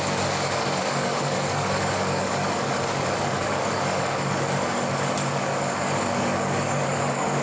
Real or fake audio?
fake